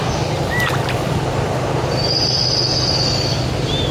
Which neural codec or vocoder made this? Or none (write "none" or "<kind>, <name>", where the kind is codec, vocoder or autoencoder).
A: none